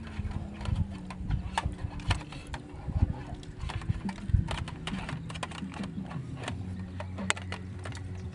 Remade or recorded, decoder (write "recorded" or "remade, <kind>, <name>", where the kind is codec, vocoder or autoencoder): recorded